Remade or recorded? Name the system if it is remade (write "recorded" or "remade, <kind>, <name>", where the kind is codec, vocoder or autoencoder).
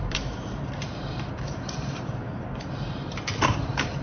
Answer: remade, vocoder, BigVGAN v2